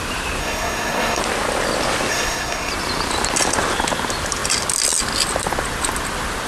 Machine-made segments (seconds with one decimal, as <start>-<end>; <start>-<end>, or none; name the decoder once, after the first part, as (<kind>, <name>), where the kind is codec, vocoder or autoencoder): 0.4-1.2 (codec, SNAC); 2.1-2.7